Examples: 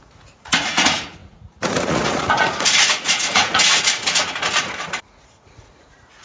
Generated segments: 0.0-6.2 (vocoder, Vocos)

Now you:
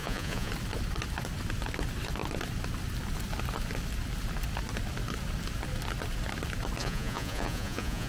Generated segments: 0.0-0.5 (vocoder, Vocos); 6.8-8.1

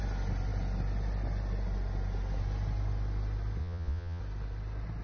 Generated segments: 3.6-4.2 (vocoder, Vocos)

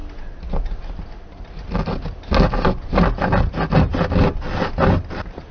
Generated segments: none

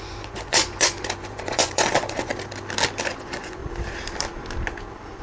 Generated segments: 0.0-2.3 (vocoder, Vocos); 3.0-3.6